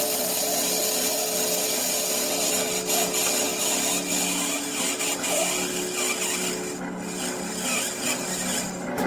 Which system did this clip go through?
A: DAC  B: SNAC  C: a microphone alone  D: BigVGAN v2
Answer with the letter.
C